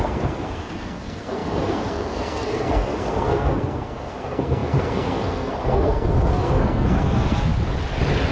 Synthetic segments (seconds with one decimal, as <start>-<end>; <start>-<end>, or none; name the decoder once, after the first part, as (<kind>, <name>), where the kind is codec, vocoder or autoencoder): 0.0-7.5 (codec, SNAC)